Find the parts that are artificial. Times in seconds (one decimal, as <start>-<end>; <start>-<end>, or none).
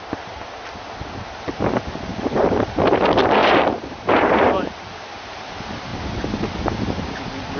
3.4-4.7